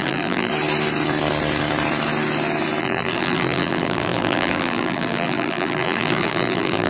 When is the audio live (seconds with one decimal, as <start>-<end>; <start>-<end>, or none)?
0.5-2.8

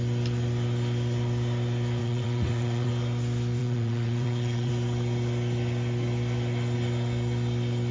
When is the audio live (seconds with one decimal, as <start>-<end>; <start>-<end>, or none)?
0.0-2.0; 2.9-3.6; 4.7-7.9

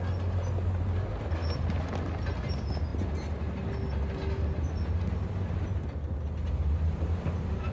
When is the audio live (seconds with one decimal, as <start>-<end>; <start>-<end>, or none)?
0.0-7.7

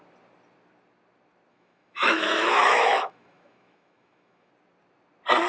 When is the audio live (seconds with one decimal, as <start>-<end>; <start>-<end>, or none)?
0.0-1.5; 4.5-5.5

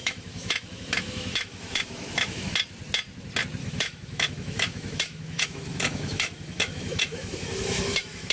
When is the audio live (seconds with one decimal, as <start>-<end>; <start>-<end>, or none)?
2.5-3.6

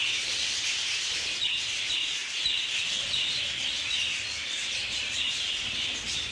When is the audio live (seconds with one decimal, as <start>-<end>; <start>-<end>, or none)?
0.0-6.3

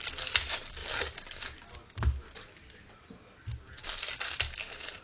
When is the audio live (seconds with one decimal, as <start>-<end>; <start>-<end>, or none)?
0.8-3.8